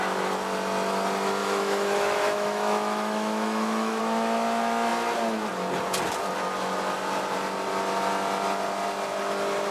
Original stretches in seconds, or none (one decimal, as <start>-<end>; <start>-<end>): 0.0-1.4; 4.0-9.7